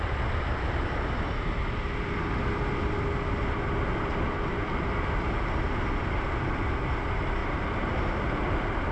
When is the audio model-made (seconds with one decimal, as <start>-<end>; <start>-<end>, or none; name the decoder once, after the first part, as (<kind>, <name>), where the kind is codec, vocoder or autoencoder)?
7.4-8.2 (vocoder, BigVGAN v2)